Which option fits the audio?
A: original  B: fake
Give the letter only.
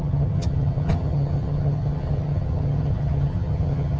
B